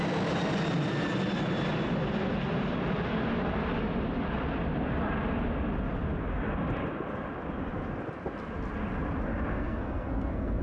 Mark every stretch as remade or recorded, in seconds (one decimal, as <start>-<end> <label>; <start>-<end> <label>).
0.0-9.5 recorded; 9.5-10.6 remade